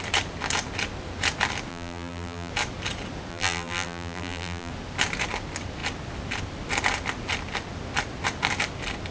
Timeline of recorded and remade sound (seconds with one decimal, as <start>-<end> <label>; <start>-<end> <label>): 0.0-1.7 recorded; 1.7-2.5 remade; 2.5-3.3 recorded; 3.3-4.7 remade; 4.7-9.1 recorded